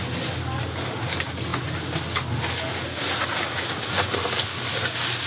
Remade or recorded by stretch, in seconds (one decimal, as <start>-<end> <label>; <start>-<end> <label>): 0.0-5.3 recorded